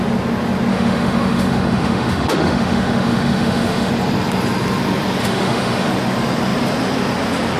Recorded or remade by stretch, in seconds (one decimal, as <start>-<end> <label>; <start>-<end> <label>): 0.0-0.7 recorded; 0.7-3.9 remade; 3.9-5.2 recorded; 5.2-5.9 remade; 5.9-7.6 recorded